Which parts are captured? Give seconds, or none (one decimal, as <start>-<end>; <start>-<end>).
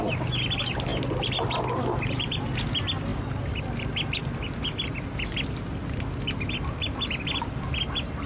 0.0-8.3